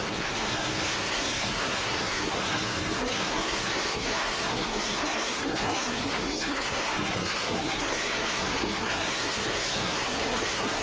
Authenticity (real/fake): fake